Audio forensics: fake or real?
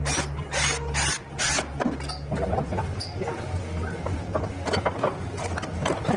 real